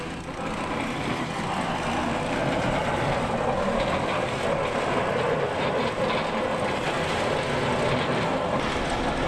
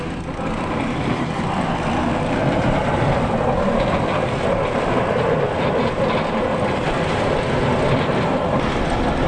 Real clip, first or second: first